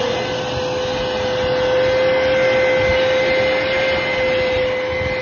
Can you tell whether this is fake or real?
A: real